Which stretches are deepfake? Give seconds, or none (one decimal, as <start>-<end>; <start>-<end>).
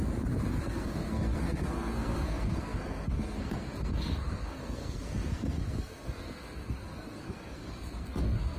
0.6-8.6